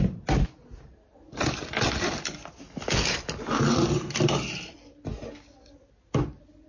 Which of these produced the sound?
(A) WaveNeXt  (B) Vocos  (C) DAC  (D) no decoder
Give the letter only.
D